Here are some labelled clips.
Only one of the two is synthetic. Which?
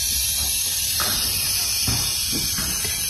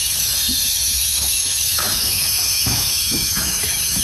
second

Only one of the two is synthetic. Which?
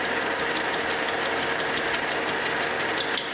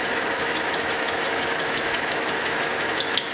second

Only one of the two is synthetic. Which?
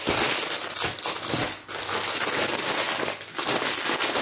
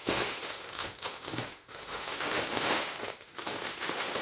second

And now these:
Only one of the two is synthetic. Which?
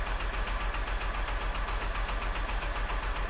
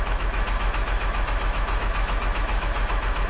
second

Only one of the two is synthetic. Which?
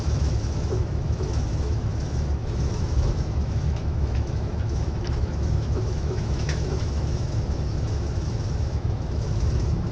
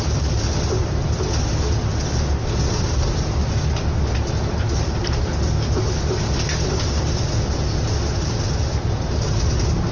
first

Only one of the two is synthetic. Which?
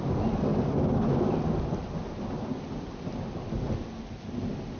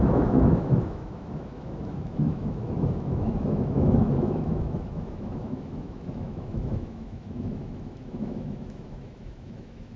second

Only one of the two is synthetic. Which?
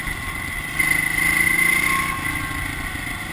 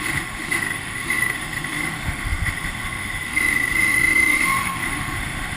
second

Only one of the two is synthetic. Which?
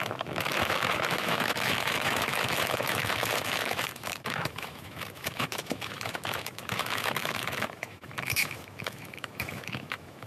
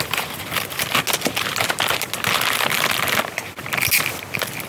first